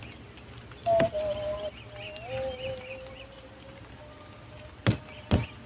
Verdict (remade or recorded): recorded